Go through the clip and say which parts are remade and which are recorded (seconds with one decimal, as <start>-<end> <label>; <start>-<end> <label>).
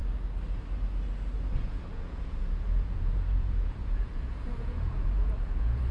0.0-1.6 recorded; 1.6-5.9 remade